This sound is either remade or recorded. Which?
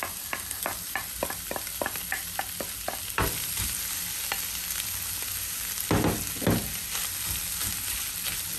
recorded